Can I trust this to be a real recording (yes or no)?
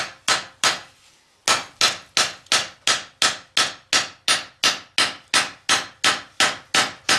yes